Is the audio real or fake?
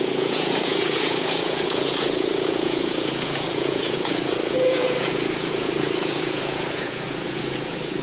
fake